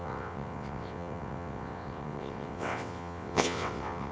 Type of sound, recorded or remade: remade